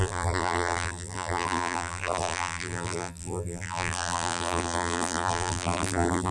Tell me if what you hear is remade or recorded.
remade